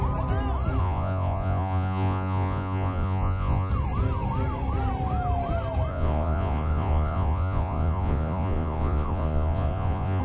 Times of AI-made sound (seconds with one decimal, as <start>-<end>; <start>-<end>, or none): 0.8-3.7; 5.9-10.2